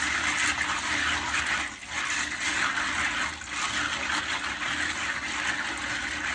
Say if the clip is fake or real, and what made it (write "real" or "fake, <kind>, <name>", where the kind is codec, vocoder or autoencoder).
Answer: real